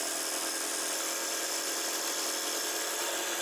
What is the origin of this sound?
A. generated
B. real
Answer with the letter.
B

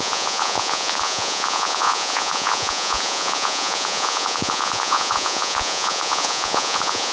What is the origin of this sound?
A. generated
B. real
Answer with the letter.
A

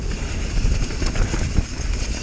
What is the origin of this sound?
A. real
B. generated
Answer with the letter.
A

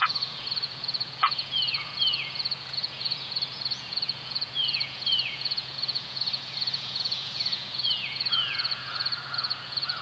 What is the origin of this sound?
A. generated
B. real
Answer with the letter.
A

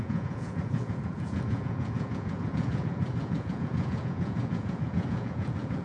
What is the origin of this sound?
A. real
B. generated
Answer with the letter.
B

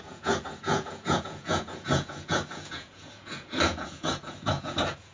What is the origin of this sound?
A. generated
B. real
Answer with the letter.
A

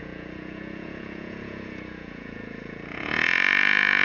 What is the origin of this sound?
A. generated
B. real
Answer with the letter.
A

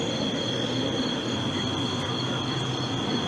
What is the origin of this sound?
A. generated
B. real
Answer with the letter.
B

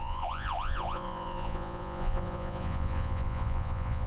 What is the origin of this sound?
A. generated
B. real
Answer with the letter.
A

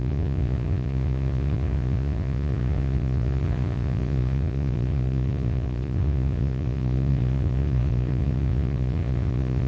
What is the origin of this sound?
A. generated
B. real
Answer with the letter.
A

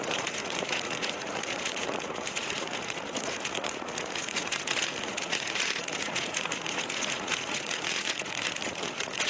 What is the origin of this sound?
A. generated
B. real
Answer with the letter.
A